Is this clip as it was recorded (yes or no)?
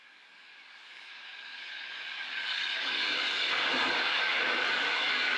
no